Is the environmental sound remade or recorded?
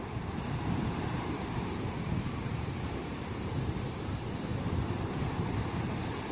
remade